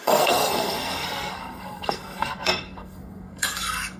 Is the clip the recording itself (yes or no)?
no